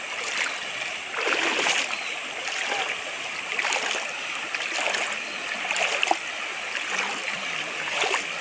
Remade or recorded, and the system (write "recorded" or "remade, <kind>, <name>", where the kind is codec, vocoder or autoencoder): recorded